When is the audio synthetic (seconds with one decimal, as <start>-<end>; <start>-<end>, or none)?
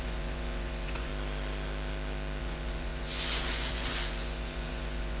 0.0-1.1; 2.4-5.2